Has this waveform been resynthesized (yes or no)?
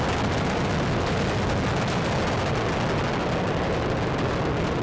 no